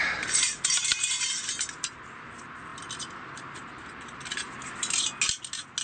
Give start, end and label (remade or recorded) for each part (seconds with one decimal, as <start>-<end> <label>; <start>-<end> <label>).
0.0-5.8 recorded